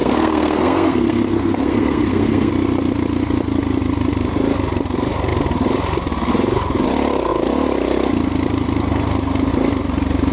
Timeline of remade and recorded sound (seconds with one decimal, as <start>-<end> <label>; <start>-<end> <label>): 0.0-2.5 remade; 2.5-10.3 recorded